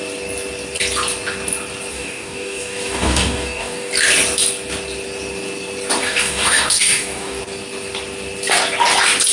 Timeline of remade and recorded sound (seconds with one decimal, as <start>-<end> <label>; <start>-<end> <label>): 0.0-1.9 recorded; 1.9-3.9 remade; 3.9-6.0 recorded; 6.0-7.4 remade; 7.4-9.3 recorded